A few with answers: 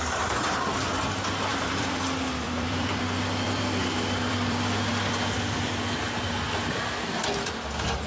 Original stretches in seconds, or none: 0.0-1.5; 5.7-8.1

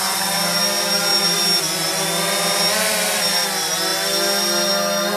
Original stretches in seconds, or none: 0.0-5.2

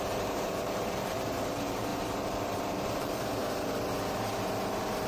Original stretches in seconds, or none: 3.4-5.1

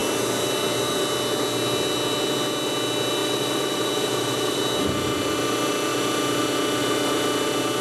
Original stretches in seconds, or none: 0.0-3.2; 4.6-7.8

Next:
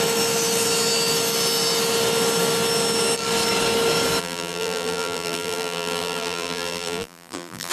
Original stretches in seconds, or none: 0.0-4.2